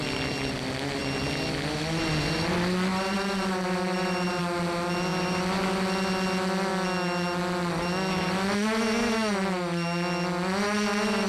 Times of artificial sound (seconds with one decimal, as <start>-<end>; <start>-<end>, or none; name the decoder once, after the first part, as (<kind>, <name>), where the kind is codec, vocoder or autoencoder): 2.9-4.4 (vocoder, BigVGAN v2)

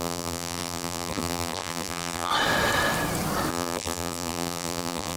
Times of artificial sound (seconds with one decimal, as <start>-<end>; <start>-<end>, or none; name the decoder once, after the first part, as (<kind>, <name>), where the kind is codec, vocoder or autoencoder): 0.0-2.3 (vocoder, BigVGAN v2); 3.5-5.2

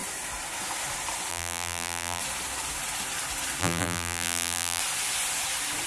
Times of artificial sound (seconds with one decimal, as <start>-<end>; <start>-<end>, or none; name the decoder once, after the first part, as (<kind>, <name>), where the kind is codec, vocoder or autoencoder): 1.3-2.2 (vocoder, BigVGAN v2); 3.6-4.8

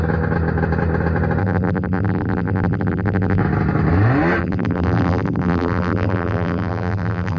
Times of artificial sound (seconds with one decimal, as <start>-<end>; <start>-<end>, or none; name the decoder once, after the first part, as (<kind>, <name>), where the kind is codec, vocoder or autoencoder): 1.4-3.4 (vocoder, BigVGAN v2); 4.4-7.4

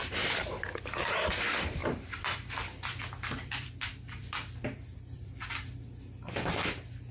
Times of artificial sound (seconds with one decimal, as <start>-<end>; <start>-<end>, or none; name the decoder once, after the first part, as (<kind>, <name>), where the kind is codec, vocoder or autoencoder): 1.8-5.5 (vocoder, BigVGAN v2)